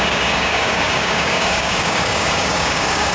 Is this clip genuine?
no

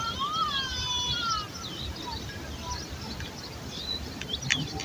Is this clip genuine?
yes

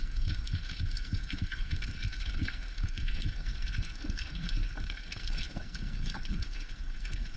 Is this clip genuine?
no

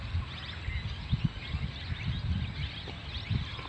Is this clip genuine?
yes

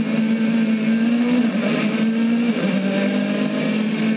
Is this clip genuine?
yes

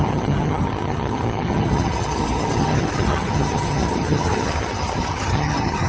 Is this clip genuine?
no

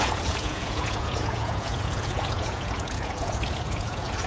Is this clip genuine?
no